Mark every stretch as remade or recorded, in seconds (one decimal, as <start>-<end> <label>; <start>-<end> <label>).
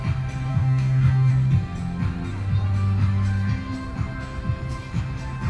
0.0-0.5 recorded; 0.5-1.3 remade; 1.3-5.5 recorded